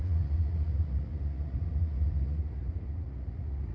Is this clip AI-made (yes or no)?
yes